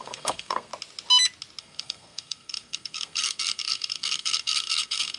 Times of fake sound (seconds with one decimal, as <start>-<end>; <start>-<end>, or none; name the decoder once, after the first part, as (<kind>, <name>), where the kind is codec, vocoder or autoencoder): 0.0-0.7 (codec, SNAC); 1.6-5.2